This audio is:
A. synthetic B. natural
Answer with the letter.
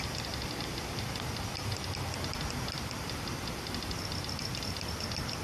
B